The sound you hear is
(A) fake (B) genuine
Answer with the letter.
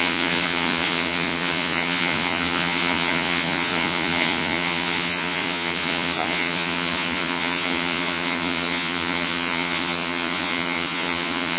A